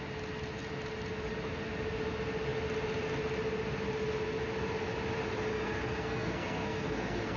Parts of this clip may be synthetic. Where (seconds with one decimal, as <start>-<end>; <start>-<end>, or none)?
5.5-7.4